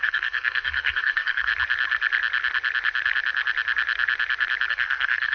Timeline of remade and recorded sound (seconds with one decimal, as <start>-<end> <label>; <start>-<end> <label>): 0.0-1.5 remade; 1.5-4.7 recorded; 4.7-5.3 remade